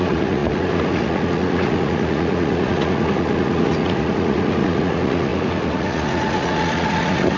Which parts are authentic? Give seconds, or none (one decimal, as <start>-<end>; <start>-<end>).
none